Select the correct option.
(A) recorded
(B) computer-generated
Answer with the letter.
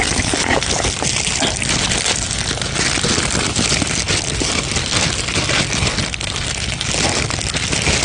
A